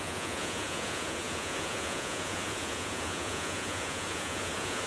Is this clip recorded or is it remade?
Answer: remade